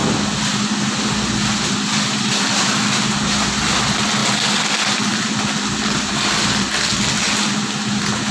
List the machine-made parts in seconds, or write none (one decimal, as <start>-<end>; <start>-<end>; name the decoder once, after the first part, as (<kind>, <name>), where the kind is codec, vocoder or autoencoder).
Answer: 4.2-7.0 (vocoder, BigVGAN v2)